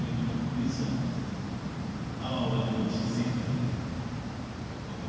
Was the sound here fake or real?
fake